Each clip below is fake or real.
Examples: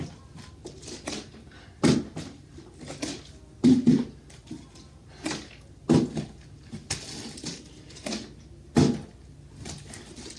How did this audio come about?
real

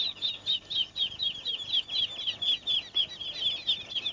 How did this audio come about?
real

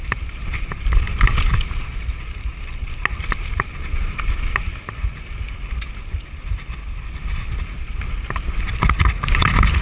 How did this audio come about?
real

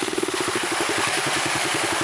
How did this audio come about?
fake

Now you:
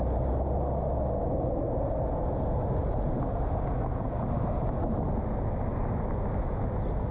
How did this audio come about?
real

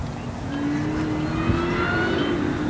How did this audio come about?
real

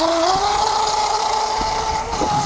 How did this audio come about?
real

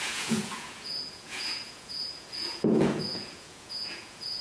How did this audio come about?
fake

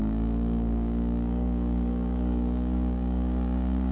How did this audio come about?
fake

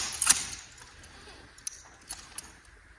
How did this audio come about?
real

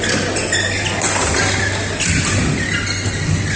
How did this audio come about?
real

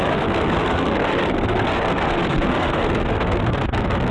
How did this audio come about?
fake